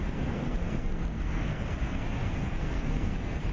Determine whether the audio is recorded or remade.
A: remade